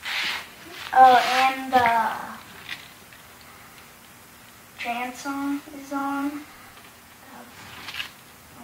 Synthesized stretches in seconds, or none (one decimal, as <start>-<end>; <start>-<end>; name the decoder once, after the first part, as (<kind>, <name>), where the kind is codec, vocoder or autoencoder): 6.0-7.9 (vocoder, Vocos)